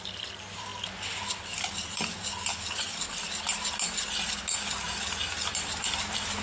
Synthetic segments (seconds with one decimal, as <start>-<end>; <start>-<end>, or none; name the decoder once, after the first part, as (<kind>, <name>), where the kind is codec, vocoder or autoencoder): none